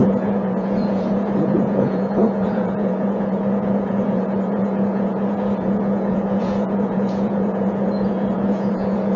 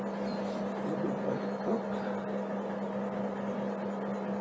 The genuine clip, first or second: second